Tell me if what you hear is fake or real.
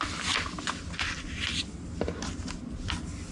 real